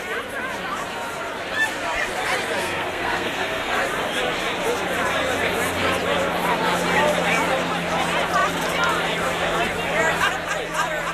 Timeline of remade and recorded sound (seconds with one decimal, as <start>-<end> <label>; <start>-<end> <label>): 0.0-2.6 recorded; 2.6-3.8 remade; 3.8-11.1 recorded